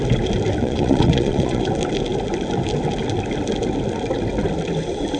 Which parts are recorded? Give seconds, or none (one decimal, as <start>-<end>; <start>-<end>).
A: 0.0-0.6; 1.6-5.2